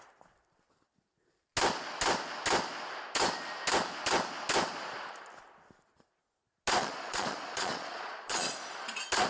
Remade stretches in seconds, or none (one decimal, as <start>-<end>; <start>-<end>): 6.8-8.6